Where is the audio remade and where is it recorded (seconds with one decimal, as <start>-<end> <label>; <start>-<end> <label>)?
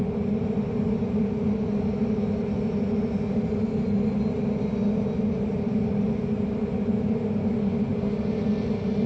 0.0-9.1 recorded